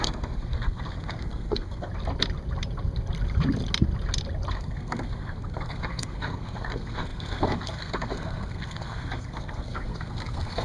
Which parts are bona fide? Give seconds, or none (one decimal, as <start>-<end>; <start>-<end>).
1.9-4.5